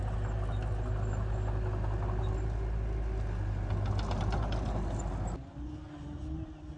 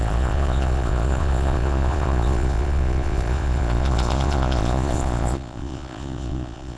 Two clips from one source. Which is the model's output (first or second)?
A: second